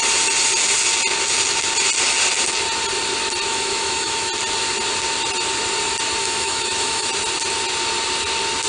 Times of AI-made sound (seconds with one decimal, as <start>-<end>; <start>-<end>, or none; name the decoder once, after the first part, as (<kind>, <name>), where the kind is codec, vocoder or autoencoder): 3.5-4.3 (autoencoder, DAC-VAE); 6.2-7.1